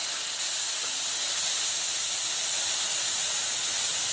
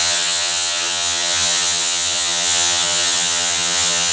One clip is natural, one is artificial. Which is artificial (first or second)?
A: second